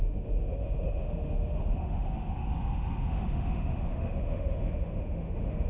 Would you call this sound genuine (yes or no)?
no